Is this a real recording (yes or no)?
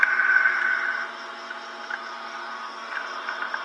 yes